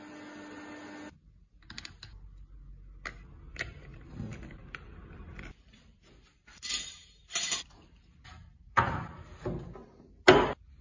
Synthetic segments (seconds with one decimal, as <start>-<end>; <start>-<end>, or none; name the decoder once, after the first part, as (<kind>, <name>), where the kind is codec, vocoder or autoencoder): 3.9-9.1 (vocoder, BigVGAN v2)